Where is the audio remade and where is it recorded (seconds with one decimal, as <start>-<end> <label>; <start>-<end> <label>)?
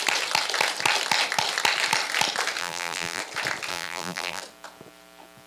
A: 0.0-2.6 recorded; 2.6-3.2 remade; 3.2-3.7 recorded; 3.7-4.4 remade; 4.4-5.5 recorded